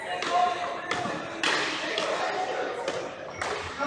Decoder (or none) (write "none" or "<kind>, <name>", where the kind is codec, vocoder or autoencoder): none